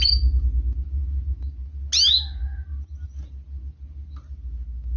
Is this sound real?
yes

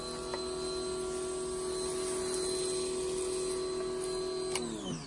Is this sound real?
yes